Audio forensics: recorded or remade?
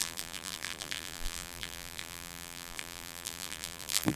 remade